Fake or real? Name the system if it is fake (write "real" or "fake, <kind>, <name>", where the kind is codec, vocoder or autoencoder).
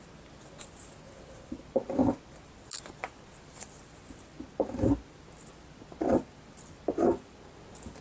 real